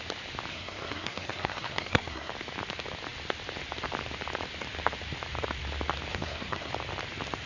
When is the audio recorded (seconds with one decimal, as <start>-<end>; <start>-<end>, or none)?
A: 0.0-0.5; 2.3-6.1; 6.7-7.5